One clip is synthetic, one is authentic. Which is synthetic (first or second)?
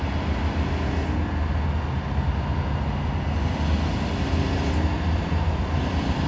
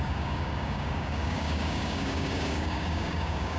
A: second